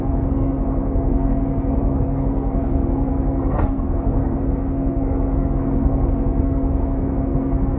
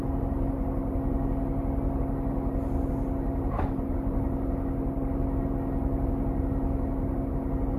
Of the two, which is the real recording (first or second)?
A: second